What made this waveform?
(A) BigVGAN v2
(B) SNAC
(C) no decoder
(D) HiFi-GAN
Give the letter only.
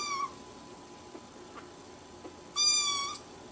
C